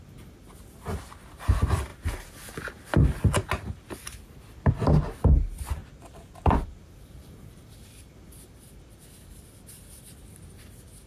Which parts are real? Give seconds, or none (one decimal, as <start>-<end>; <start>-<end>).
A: 0.0-5.8; 7.9-11.1